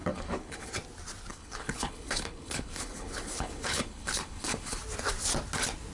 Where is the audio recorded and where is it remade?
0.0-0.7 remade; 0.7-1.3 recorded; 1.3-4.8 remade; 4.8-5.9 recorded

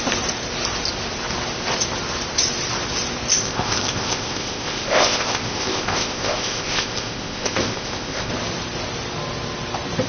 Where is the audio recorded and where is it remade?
0.0-3.3 recorded; 3.3-8.3 remade; 8.3-10.1 recorded

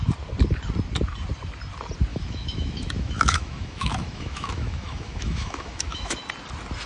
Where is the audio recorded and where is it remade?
0.0-2.1 recorded; 2.1-6.2 remade; 6.2-6.9 recorded

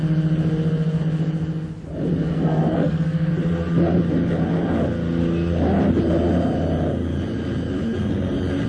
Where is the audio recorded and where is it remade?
0.0-2.3 recorded; 2.3-3.3 remade; 3.3-8.7 recorded

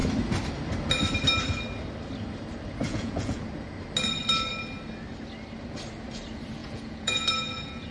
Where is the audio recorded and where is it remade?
0.0-2.9 recorded; 2.9-3.4 remade; 3.4-6.6 recorded; 6.6-7.9 remade

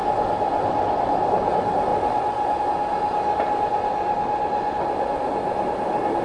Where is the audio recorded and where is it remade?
0.0-6.2 recorded

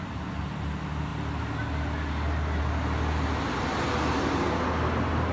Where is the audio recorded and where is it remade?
0.0-5.3 recorded

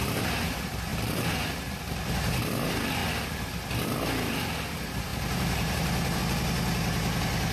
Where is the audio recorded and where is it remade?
0.0-0.9 recorded; 0.9-1.4 remade; 1.4-5.1 recorded; 5.1-6.2 remade; 6.2-7.5 recorded